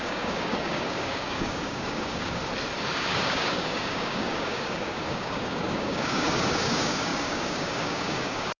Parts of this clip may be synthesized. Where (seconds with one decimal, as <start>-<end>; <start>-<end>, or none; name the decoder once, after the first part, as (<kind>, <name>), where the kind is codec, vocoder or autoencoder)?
0.0-2.4 (codec, DAC); 2.9-8.6